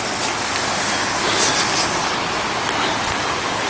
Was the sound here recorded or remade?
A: recorded